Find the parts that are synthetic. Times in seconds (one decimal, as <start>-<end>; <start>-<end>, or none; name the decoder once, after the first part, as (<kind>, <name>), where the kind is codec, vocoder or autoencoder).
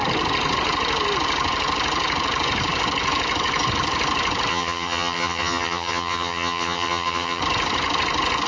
4.5-7.4 (vocoder, HiFi-GAN)